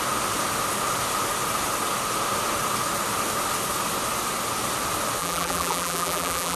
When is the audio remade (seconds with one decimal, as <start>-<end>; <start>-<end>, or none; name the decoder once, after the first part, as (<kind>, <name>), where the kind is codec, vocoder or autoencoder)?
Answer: 5.2-6.6 (vocoder, BigVGAN v2)